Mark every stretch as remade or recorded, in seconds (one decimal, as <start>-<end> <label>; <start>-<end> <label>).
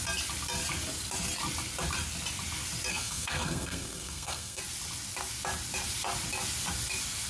0.0-2.9 recorded; 2.9-4.6 remade; 4.6-7.3 recorded